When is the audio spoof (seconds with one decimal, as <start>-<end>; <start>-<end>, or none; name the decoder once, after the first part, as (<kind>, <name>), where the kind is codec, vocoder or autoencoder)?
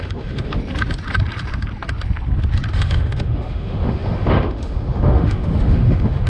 0.0-0.6 (autoencoder, DAC-VAE); 2.7-6.3